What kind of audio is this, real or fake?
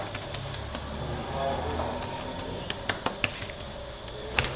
real